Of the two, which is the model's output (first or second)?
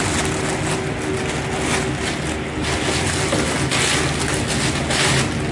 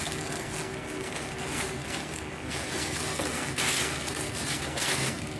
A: second